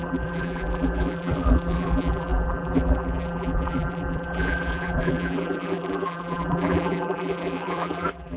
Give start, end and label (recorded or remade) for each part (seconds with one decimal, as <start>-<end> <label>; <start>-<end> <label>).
0.0-8.4 remade